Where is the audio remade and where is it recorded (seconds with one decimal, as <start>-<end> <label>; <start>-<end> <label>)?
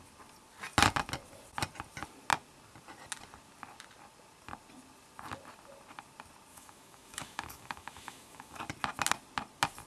0.0-6.5 recorded; 6.5-8.6 remade; 8.6-9.9 recorded